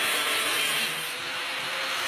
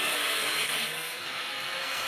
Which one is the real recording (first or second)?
first